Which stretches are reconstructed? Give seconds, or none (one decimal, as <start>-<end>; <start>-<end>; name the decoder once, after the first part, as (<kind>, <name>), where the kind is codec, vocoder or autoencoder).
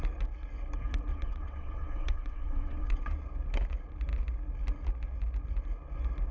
1.1-3.2 (vocoder, WaveNeXt)